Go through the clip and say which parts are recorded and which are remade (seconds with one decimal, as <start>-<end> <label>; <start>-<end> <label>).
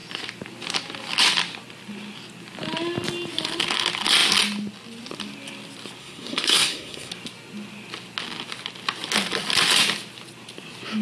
0.0-6.0 recorded; 6.0-7.1 remade; 7.1-11.0 recorded